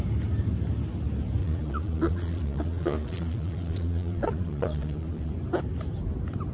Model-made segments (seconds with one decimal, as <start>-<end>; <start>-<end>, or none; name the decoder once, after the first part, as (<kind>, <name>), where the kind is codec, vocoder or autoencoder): 1.4-5.3 (vocoder, Vocos)